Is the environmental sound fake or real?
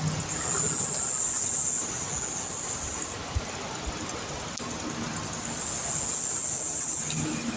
real